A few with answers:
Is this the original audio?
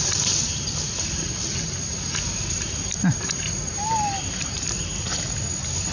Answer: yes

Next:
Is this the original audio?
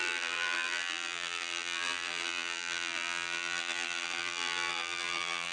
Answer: no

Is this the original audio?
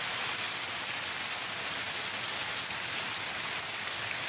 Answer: yes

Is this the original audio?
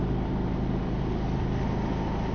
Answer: yes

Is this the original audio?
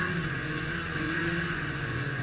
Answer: no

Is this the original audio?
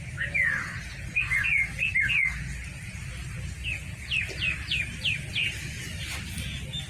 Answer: yes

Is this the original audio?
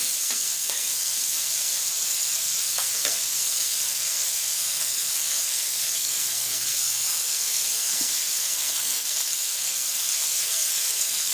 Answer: no